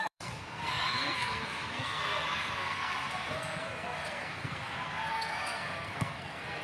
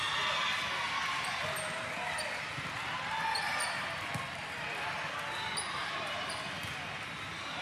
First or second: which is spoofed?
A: first